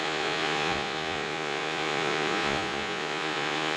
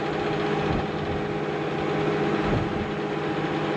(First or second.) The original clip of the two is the second